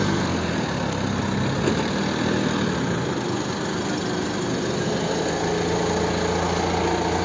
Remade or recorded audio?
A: recorded